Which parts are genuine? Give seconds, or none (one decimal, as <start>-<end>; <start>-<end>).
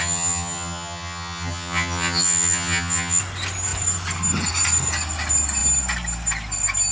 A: 3.2-6.9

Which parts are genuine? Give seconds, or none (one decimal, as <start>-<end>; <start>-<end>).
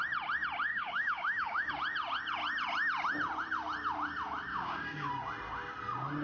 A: 0.0-0.7; 1.7-4.5; 5.1-6.2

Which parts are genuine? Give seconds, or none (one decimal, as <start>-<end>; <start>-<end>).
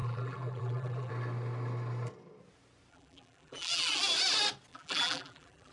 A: 1.1-2.9; 4.0-4.7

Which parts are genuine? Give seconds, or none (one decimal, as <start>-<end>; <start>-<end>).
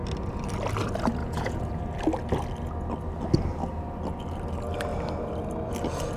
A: 0.0-1.2; 1.8-6.2